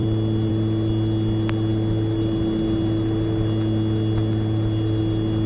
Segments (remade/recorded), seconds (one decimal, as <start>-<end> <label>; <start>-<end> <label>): 0.0-5.5 recorded